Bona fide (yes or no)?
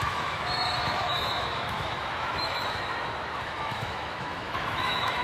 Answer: no